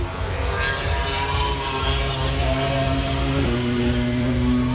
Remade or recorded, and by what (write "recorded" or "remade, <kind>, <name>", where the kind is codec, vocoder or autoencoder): recorded